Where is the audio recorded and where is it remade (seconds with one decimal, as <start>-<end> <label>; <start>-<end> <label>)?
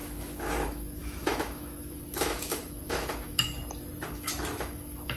0.0-3.6 remade; 3.6-4.1 recorded; 4.1-5.2 remade